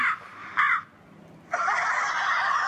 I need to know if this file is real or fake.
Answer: real